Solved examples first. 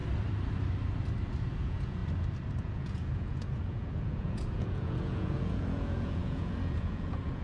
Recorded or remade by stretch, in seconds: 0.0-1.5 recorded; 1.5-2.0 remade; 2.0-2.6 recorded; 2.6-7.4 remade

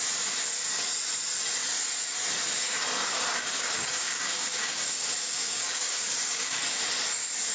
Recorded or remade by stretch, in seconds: 0.0-3.4 recorded; 3.4-6.6 remade; 6.6-7.5 recorded

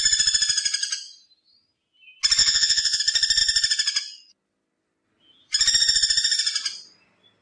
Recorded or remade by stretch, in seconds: 0.0-2.4 recorded; 2.4-3.0 remade; 3.0-7.4 recorded

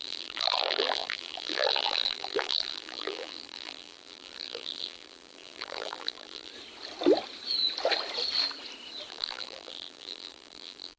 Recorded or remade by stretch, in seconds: 0.0-6.5 remade; 6.5-9.1 recorded; 9.1-11.0 remade

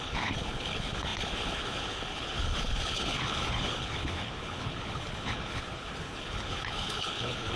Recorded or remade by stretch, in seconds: 0.0-7.6 remade

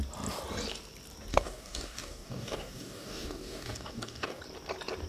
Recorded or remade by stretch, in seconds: 0.0-1.3 recorded; 1.3-4.4 remade; 4.4-5.1 recorded